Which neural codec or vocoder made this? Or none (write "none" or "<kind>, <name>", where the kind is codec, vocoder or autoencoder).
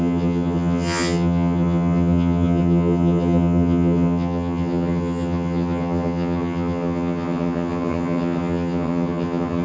vocoder, HiFi-GAN